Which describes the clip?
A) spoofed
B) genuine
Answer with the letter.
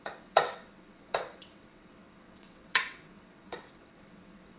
A